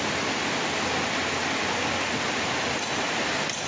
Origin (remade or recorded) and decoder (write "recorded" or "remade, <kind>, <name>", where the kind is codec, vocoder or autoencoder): recorded